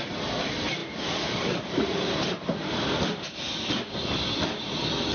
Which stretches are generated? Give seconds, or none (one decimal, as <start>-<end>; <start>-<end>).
0.8-3.4